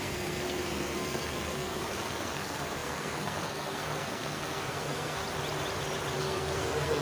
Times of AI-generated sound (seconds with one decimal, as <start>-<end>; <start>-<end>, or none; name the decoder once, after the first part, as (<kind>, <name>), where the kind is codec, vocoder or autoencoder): 0.0-5.2 (codec, SNAC); 6.2-7.0